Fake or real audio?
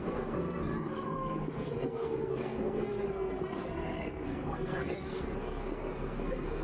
fake